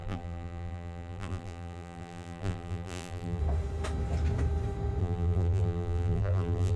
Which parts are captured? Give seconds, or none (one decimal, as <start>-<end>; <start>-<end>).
3.4-5.0